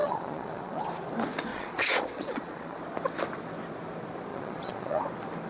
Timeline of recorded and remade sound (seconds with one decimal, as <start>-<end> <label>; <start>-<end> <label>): 0.0-0.8 remade; 0.8-1.5 recorded; 1.5-2.8 remade; 2.8-4.3 recorded; 4.3-5.0 remade; 5.0-5.5 recorded